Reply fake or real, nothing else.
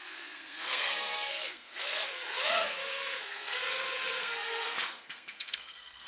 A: fake